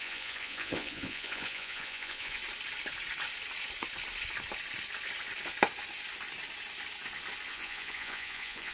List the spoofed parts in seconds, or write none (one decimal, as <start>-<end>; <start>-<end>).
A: 0.0-2.4; 7.5-8.7